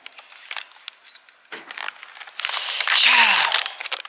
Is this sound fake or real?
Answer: real